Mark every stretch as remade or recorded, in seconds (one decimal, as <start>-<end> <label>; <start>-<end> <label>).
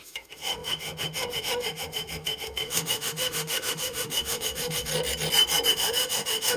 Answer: 0.0-4.9 remade; 4.9-5.7 recorded; 5.7-6.6 remade